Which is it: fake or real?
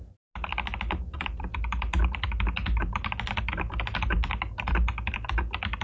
real